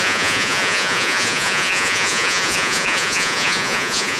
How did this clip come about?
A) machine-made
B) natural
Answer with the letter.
A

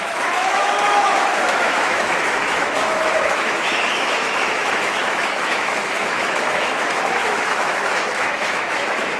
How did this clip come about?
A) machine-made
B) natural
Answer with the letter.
A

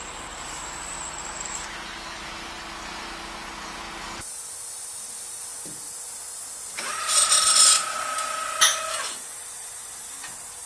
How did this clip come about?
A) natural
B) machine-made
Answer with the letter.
A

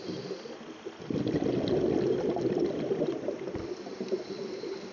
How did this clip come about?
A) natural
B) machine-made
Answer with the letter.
A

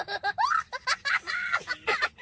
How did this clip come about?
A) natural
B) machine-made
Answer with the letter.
A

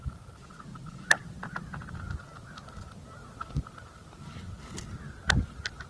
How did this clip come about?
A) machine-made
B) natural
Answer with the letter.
B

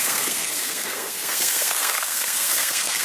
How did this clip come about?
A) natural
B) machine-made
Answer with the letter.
B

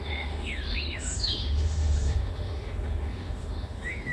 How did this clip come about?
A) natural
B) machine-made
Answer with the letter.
B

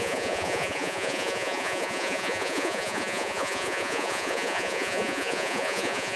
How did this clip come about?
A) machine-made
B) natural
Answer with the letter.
A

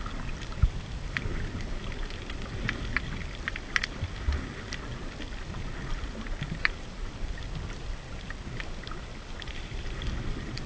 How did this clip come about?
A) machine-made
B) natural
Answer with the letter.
B